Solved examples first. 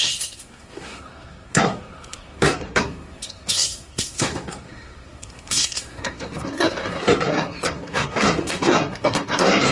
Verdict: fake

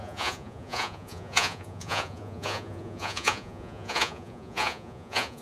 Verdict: fake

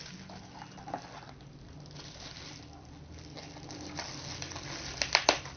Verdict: real